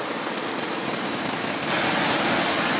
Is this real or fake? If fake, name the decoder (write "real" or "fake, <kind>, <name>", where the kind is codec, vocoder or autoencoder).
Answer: real